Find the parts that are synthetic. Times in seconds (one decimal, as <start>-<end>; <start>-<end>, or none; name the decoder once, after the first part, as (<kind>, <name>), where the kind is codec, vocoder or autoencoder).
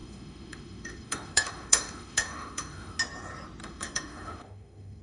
0.0-3.0 (autoencoder, DAC-VAE); 3.6-5.0